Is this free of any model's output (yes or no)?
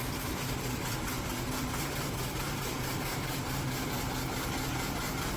no